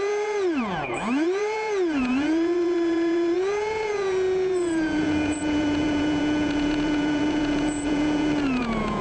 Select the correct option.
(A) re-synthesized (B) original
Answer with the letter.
A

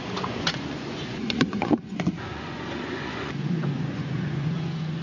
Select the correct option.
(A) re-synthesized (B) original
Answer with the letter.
A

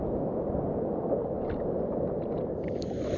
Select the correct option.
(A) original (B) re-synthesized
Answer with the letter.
A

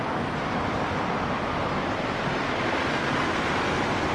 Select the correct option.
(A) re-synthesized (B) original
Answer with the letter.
B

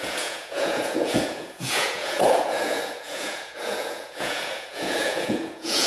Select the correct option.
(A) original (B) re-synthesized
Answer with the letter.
B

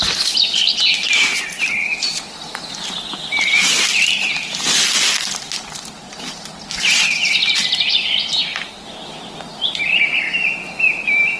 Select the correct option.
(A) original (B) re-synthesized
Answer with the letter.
A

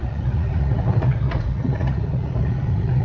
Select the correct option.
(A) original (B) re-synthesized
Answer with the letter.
B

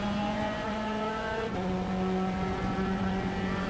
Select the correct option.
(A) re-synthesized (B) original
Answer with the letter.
A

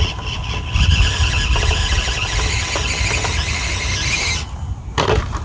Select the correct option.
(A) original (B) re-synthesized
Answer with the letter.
A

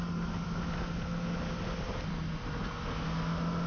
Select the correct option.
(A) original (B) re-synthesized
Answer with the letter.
A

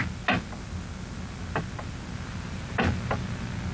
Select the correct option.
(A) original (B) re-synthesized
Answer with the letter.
A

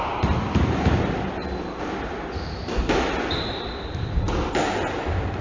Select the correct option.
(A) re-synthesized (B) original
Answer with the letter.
B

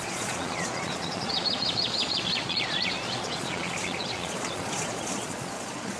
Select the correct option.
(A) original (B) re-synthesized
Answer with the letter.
B